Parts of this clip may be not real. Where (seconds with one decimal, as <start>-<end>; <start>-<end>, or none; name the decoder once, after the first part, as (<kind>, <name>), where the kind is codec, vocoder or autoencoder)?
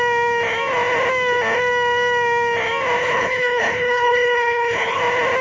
3.0-5.0 (codec, HILCodec)